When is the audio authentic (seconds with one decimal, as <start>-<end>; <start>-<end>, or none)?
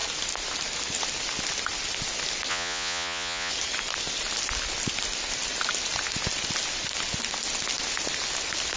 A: 0.0-2.5; 3.5-8.8